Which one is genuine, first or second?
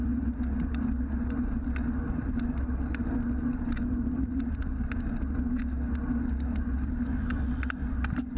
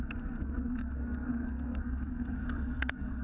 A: first